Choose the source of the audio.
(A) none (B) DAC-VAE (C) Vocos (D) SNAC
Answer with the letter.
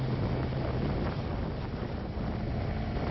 A